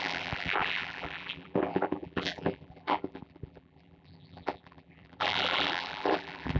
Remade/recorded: remade